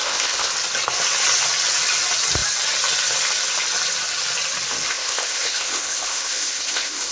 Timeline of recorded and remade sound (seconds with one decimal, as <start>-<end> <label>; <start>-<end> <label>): 0.0-0.5 remade; 0.5-4.9 recorded; 4.9-7.1 remade